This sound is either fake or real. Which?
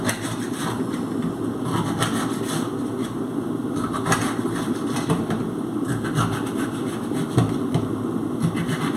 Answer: real